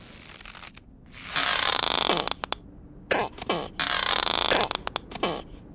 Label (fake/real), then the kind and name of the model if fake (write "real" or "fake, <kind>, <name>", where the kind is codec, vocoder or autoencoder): real